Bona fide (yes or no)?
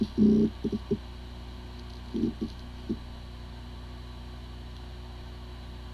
yes